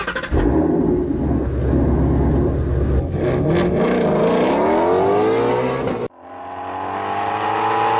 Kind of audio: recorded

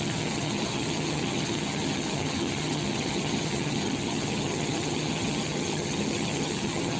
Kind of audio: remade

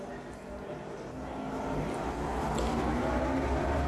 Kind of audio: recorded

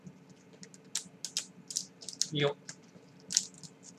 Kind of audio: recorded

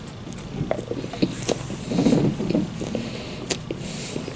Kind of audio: recorded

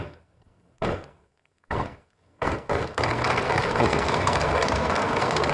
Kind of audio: remade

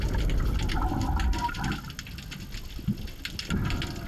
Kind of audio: recorded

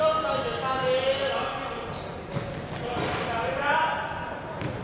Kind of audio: recorded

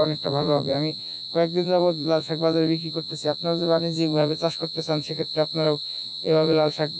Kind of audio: remade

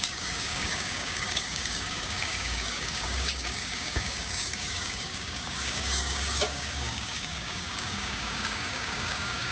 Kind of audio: remade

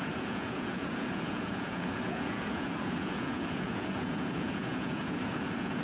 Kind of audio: remade